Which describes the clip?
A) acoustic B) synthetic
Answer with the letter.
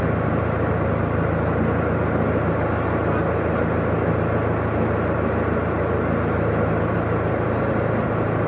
A